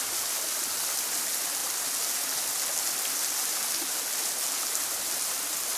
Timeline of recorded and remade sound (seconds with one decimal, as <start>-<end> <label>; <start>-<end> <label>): 0.0-5.8 recorded